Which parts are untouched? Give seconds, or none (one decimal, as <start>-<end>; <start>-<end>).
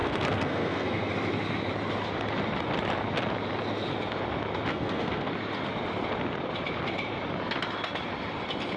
1.1-4.7; 5.3-8.8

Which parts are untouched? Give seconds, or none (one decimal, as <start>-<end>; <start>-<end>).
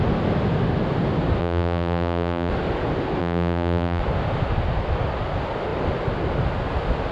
0.0-1.4; 2.5-3.2; 4.0-7.1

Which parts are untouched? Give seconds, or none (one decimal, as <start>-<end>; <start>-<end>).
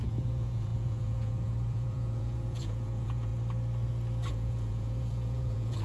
3.3-4.3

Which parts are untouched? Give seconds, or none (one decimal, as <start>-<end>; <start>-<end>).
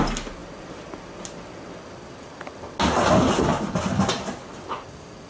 0.0-5.3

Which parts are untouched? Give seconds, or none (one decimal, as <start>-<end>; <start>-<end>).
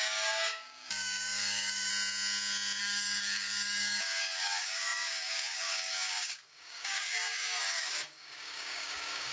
1.9-2.8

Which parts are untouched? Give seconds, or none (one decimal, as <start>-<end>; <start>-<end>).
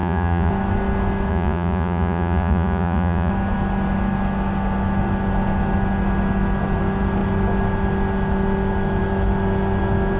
0.5-1.3; 3.3-10.2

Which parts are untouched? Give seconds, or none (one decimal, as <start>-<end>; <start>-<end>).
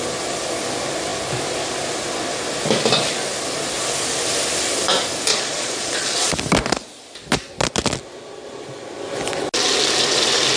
0.0-5.3; 6.3-10.6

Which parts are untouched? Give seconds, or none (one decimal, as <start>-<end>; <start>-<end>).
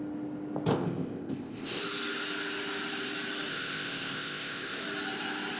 0.0-0.7; 1.8-3.5; 4.8-5.6